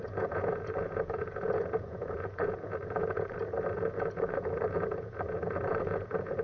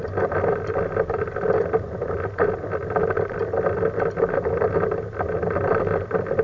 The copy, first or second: first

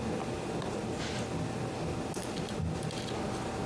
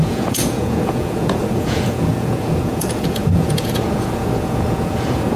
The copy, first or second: second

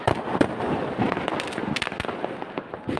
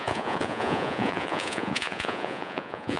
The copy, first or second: second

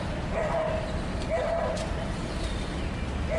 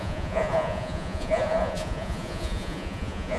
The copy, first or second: second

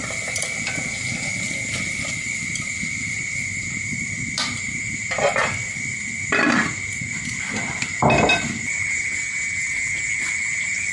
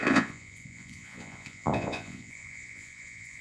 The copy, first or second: second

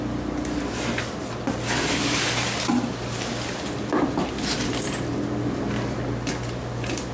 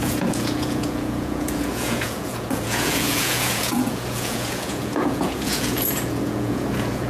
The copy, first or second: second